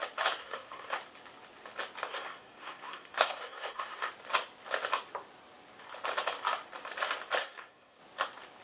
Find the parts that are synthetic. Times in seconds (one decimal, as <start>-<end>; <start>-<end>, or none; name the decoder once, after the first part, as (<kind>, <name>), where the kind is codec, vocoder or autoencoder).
0.4-1.0 (codec, SNAC); 2.1-4.1; 7.4-8.0

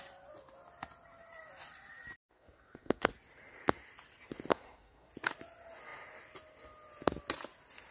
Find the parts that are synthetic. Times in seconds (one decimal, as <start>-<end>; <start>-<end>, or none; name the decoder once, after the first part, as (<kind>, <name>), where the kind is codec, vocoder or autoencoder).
2.2-3.1 (codec, SNAC); 4.5-5.1

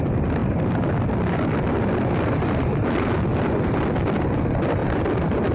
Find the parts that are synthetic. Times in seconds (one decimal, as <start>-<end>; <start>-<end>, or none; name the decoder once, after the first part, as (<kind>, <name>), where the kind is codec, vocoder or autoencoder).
none

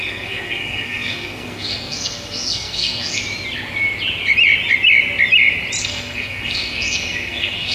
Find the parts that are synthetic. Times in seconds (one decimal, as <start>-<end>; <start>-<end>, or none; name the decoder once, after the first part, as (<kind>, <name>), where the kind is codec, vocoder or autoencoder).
0.0-3.2 (codec, SNAC); 5.8-7.7

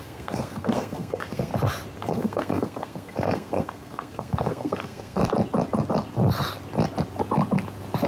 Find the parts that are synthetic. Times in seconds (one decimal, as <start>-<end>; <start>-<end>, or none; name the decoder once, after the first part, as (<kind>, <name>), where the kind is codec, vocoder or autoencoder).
0.0-1.5 (codec, SNAC); 2.0-5.2

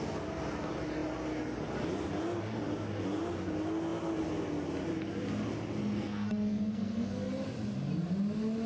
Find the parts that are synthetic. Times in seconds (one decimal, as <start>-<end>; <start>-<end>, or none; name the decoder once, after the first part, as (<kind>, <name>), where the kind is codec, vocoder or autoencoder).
5.8-7.3 (codec, SNAC)

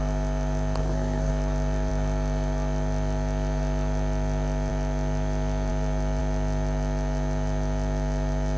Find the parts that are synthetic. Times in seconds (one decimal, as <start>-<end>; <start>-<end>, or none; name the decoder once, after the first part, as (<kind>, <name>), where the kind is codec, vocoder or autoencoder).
0.8-1.3 (codec, SNAC)